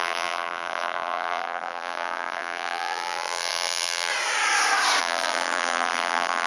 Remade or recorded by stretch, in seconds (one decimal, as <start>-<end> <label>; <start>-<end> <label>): 0.0-4.1 remade; 4.1-5.0 recorded; 5.0-6.5 remade